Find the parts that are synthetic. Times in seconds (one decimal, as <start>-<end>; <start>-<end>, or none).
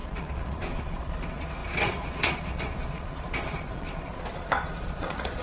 0.0-5.4